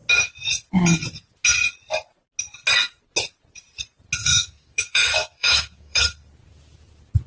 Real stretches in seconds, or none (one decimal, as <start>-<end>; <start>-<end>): 0.0-4.3; 6.0-7.3